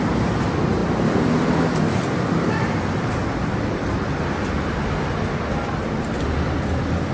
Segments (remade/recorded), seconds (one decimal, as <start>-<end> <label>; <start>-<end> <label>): 0.0-7.1 recorded

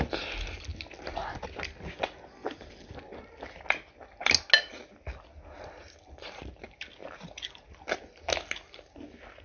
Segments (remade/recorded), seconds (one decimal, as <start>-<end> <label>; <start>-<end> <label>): 0.0-2.4 recorded; 2.4-2.9 remade; 2.9-7.0 recorded; 7.0-7.8 remade; 7.8-9.4 recorded